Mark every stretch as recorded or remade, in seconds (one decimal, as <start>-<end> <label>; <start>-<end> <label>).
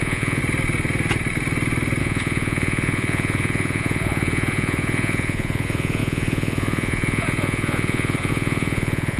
0.0-0.4 remade; 0.4-2.0 recorded; 2.0-9.2 remade